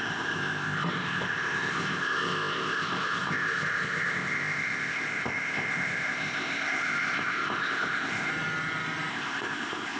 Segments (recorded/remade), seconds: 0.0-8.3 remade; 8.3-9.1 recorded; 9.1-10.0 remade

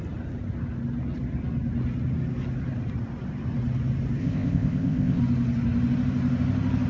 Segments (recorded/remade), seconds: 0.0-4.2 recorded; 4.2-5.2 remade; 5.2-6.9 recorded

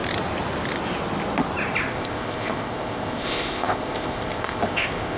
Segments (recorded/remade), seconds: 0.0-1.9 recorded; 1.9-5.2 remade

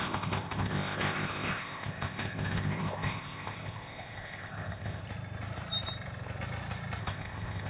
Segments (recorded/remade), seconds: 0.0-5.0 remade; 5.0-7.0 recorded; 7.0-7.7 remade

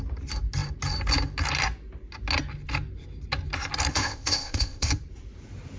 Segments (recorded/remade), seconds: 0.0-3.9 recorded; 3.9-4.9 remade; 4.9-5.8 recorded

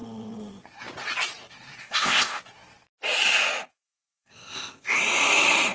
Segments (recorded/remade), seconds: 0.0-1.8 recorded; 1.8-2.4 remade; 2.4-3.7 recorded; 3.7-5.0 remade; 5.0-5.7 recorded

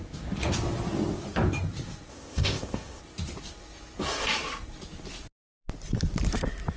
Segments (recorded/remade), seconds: 0.0-2.1 recorded; 2.1-3.0 remade; 3.0-6.8 recorded

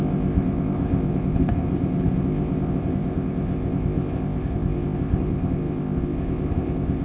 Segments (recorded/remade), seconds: 0.0-7.0 remade